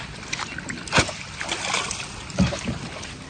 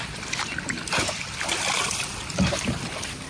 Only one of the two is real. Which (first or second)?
first